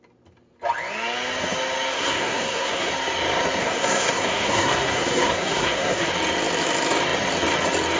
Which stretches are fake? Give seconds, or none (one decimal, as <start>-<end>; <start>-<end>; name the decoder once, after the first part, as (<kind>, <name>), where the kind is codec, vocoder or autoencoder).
1.9-2.9 (codec, SNAC); 3.6-6.1